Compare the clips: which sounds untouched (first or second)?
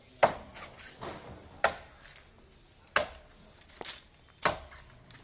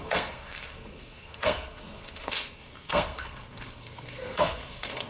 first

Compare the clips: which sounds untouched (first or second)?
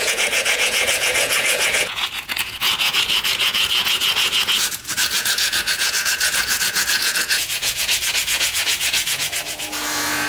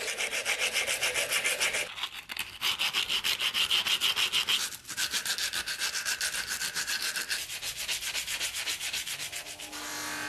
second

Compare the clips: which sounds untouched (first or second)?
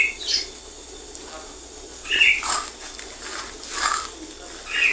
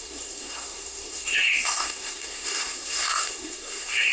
first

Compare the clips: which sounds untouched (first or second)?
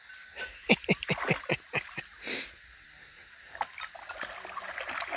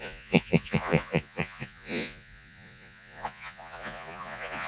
first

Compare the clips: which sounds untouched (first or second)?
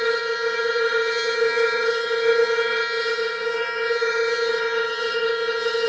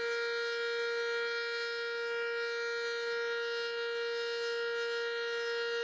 second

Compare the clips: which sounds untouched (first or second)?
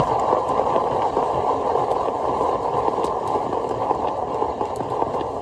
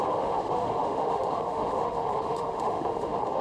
first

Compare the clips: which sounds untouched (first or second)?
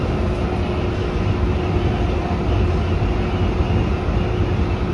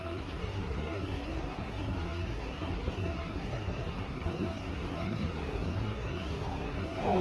first